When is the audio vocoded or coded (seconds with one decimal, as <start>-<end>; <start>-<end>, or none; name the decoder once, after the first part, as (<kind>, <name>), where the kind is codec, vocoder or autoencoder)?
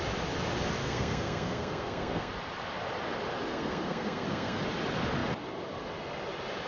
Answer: 0.8-2.3 (codec, SNAC); 3.5-4.6